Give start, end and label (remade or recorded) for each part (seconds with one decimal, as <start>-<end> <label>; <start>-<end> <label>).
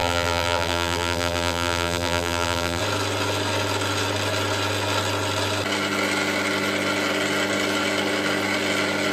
0.0-2.8 remade; 2.8-9.1 recorded